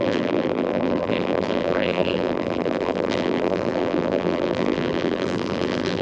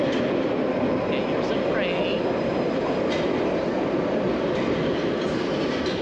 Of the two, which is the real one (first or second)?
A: second